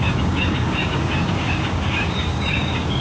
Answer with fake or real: fake